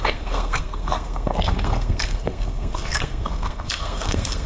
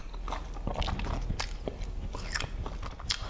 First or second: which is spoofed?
first